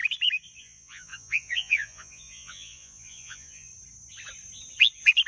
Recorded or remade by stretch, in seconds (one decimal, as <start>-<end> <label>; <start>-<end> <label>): 0.0-0.6 recorded; 0.6-3.7 remade; 3.7-5.3 recorded